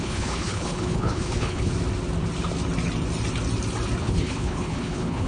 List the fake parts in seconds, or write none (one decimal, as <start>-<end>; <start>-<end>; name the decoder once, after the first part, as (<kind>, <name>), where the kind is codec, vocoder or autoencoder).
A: 0.0-1.7 (codec, HILCodec); 4.0-5.3